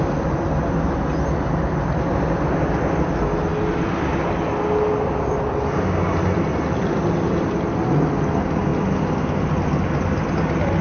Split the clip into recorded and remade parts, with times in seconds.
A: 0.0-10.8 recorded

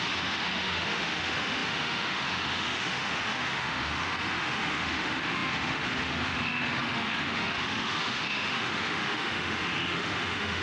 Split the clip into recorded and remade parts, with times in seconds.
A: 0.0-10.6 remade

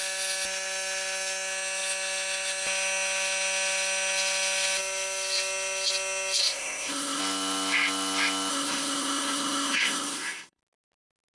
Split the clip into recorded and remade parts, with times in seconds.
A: 0.0-6.4 recorded; 6.4-7.2 remade; 7.2-8.5 recorded; 8.5-10.6 remade; 10.6-11.3 recorded